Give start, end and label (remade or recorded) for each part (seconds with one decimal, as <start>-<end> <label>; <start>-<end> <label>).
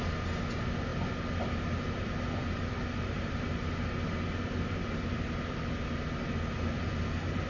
0.0-7.5 recorded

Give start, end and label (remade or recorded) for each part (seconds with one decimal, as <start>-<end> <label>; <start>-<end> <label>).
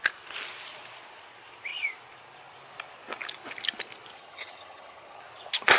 0.0-4.1 recorded; 4.1-5.2 remade; 5.2-5.8 recorded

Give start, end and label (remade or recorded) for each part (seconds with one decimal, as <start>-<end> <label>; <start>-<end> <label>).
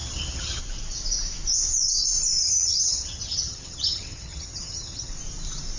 0.0-0.6 remade; 0.6-2.4 recorded; 2.4-5.1 remade; 5.1-5.8 recorded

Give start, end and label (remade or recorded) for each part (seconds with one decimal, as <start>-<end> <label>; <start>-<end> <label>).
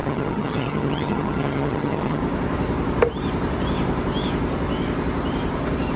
0.0-2.2 remade; 2.2-6.0 recorded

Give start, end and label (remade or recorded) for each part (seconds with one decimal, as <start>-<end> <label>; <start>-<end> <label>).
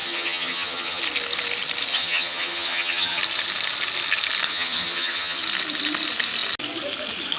0.0-1.0 remade; 1.0-1.9 recorded; 1.9-3.2 remade; 3.2-4.5 recorded; 4.5-5.4 remade; 5.4-7.4 recorded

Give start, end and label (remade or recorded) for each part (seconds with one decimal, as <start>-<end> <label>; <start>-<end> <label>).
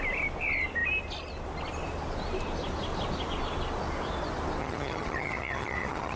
0.0-4.6 recorded; 4.6-6.2 remade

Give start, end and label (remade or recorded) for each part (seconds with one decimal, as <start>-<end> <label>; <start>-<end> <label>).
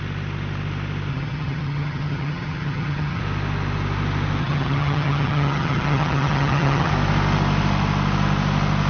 0.0-1.1 recorded; 1.1-3.2 remade; 3.2-4.4 recorded; 4.4-6.9 remade; 6.9-8.9 recorded